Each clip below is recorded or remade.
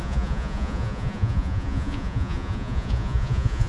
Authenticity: remade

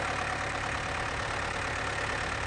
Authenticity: recorded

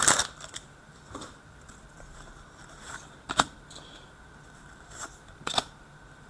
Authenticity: remade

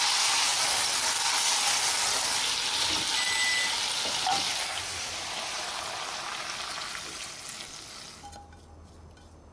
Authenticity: recorded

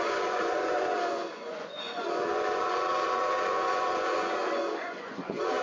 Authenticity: remade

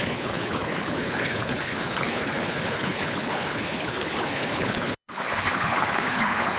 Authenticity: remade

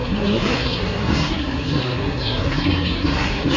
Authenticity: remade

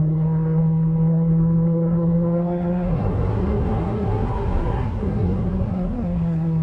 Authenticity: remade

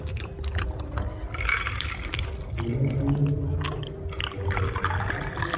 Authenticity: recorded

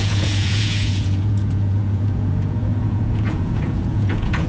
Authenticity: remade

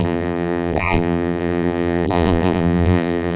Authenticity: remade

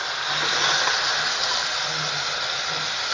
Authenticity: recorded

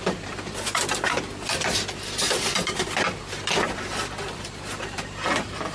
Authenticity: recorded